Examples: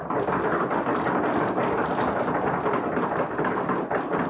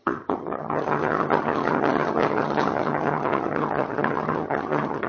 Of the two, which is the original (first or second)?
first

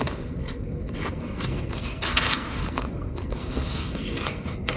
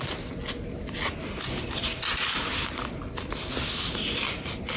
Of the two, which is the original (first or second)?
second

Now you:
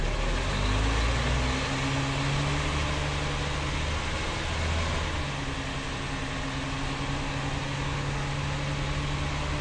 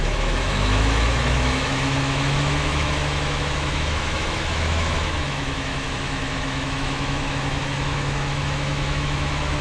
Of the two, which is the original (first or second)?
first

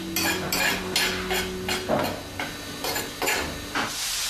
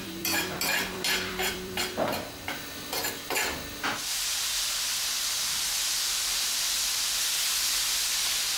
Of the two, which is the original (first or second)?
first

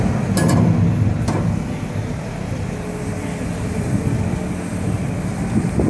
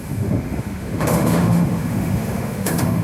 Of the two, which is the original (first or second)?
first